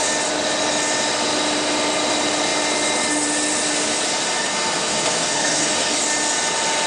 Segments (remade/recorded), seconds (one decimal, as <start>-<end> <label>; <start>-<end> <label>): 0.0-4.4 recorded; 4.4-5.9 remade; 5.9-6.9 recorded